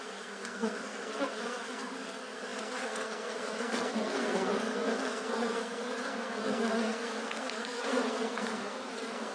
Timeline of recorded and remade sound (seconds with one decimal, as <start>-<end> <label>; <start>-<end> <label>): 0.0-9.3 remade